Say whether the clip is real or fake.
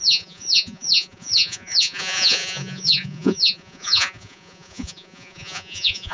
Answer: fake